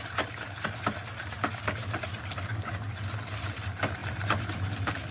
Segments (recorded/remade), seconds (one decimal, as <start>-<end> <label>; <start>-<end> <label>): 0.0-5.1 recorded